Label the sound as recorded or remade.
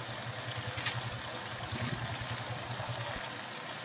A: recorded